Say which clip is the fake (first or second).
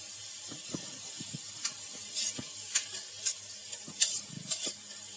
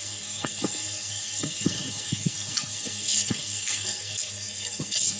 second